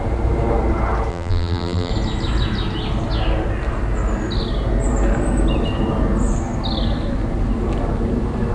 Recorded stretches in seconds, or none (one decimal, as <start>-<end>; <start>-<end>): 0.0-1.1; 1.9-8.5